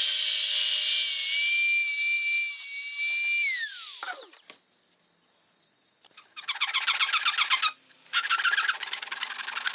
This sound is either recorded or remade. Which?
recorded